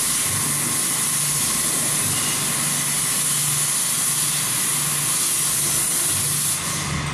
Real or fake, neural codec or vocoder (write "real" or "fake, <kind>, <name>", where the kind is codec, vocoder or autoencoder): real